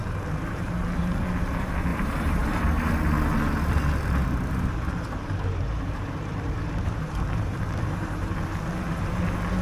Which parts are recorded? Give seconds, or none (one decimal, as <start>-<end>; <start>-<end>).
0.7-1.9; 2.9-4.2; 8.4-9.6